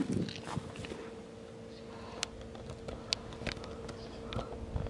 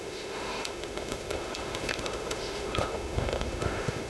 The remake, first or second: second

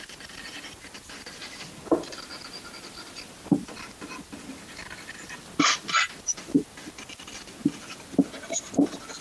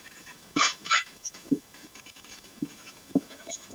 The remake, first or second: second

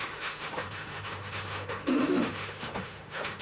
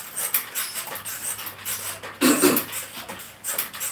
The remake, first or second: first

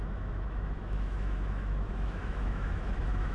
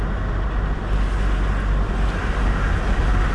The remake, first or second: first